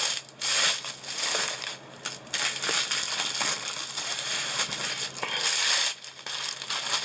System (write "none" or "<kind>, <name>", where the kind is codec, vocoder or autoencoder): none